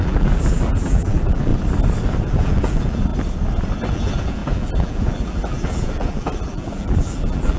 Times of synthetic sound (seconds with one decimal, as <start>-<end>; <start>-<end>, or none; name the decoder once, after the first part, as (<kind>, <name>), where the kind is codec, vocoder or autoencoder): 0.0-1.5 (vocoder, BigVGAN v2); 2.2-3.1; 3.9-7.6